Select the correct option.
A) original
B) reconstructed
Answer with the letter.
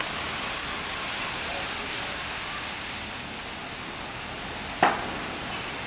A